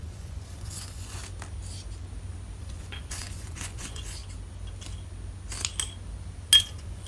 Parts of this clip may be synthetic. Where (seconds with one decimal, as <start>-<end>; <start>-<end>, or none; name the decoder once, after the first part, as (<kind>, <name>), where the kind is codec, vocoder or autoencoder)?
0.0-1.2 (vocoder, Vocos); 2.6-4.2; 6.6-7.1